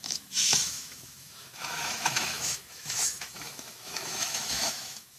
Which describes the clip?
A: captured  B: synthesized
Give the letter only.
B